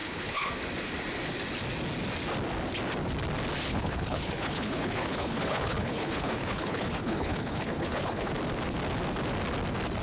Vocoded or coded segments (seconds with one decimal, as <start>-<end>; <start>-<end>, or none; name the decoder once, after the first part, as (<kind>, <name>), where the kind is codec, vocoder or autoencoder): 0.0-0.5 (codec, HILCodec); 3.7-8.3